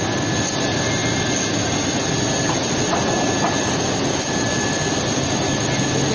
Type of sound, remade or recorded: recorded